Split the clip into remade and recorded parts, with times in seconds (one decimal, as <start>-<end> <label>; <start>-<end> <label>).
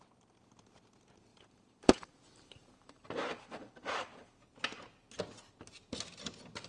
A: 0.0-1.3 recorded; 1.3-4.4 remade; 4.4-6.7 recorded